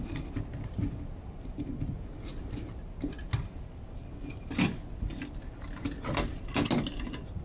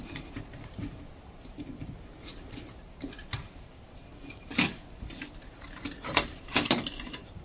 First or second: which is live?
first